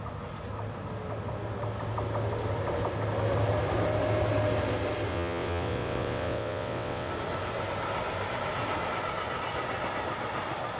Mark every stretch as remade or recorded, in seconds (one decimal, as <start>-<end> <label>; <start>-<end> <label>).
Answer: 0.0-5.1 recorded; 5.1-7.1 remade; 7.1-10.8 recorded